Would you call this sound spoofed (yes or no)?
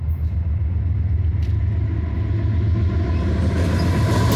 no